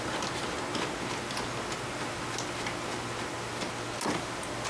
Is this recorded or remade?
recorded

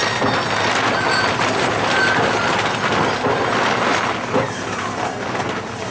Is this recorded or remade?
recorded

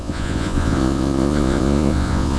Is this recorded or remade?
remade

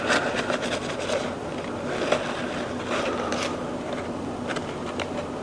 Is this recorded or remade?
recorded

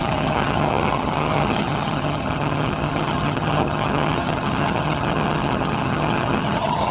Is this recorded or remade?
remade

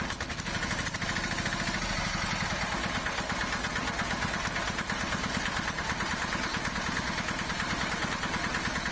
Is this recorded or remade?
recorded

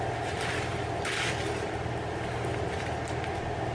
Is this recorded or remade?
recorded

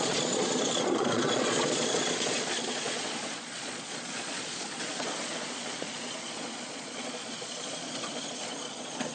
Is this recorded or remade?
remade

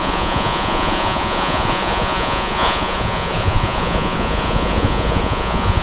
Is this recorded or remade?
remade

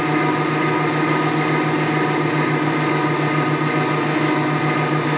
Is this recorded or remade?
recorded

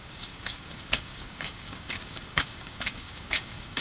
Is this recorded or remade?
remade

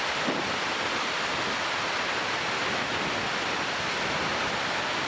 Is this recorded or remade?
recorded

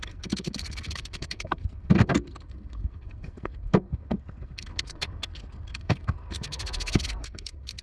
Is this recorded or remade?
remade